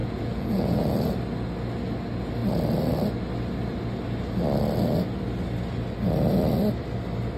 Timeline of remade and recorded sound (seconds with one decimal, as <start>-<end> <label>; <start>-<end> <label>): 0.0-0.9 remade; 0.9-7.4 recorded